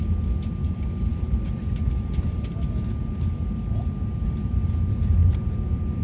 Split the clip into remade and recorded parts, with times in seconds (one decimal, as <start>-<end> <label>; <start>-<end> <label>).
0.0-6.0 recorded